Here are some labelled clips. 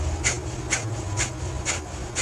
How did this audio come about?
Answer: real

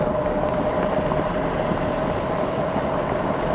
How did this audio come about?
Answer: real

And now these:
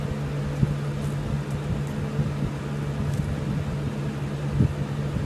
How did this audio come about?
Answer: real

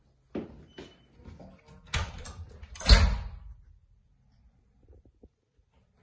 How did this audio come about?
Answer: real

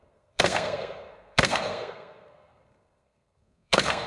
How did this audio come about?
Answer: fake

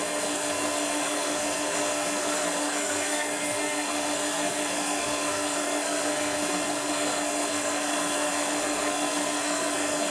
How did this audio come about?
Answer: fake